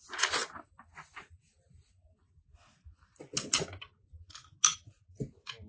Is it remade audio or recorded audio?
recorded